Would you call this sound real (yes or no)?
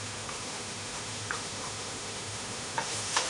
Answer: no